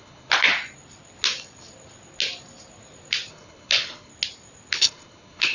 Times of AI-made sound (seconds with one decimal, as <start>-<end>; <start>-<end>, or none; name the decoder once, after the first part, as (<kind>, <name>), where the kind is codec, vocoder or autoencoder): 0.0-0.5 (codec, HILCodec); 3.3-4.1; 4.7-5.5